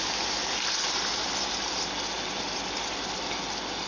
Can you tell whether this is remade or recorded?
recorded